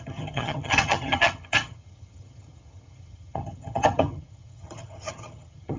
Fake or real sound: fake